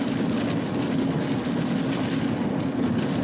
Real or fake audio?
real